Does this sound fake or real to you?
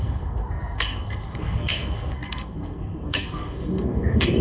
fake